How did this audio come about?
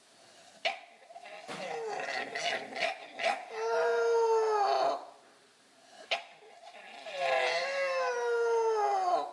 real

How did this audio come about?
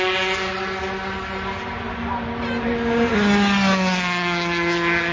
real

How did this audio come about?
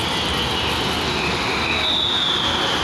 real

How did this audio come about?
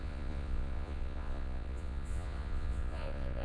fake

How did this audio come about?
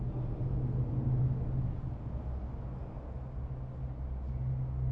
real